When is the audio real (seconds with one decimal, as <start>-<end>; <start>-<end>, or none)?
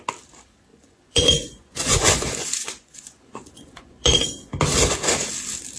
0.0-0.7; 4.2-5.8